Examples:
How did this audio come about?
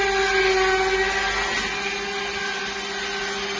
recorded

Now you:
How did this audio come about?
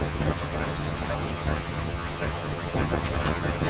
remade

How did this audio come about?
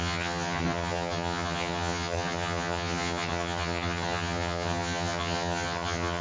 remade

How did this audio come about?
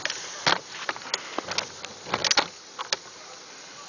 recorded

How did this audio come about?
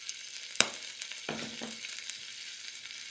recorded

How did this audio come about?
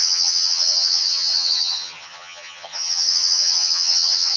remade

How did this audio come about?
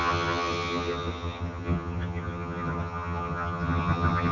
remade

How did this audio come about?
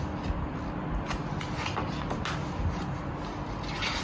recorded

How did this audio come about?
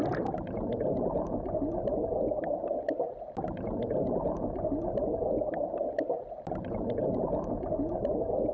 recorded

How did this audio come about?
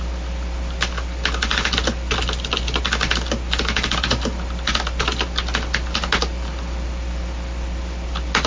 recorded